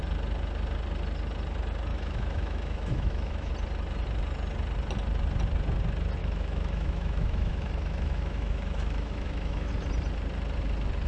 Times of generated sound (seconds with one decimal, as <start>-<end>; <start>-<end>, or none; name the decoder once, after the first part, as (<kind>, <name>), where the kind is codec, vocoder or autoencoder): 1.9-3.5 (autoencoder, DAC-VAE); 6.2-9.7